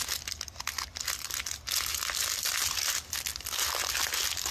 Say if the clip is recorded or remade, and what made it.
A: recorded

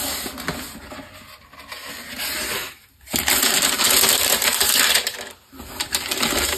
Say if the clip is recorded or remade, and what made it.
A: recorded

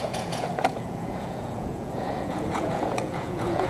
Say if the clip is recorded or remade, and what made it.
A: remade, vocoder, Vocos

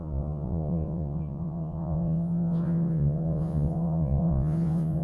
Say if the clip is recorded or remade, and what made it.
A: remade, vocoder, Vocos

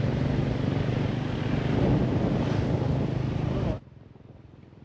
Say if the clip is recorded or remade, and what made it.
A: recorded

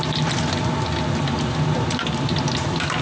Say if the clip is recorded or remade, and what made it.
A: recorded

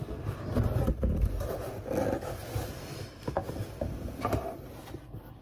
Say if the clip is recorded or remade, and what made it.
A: recorded